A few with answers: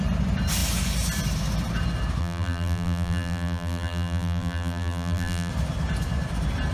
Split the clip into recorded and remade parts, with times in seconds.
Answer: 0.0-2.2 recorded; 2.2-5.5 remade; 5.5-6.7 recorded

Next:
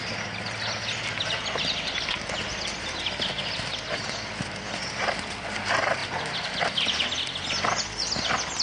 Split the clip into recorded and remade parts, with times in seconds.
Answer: 0.0-8.6 recorded